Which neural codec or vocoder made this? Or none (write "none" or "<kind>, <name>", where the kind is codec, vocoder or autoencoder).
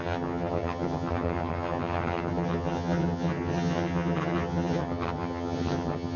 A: vocoder, HiFi-GAN